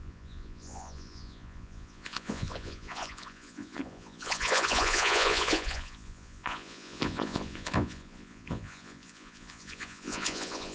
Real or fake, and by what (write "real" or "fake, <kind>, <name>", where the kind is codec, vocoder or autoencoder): fake, vocoder, Vocos